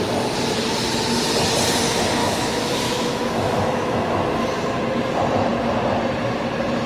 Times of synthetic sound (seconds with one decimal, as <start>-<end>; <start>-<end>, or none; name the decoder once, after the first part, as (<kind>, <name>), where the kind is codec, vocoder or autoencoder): 2.2-4.3 (autoencoder, DAC-VAE)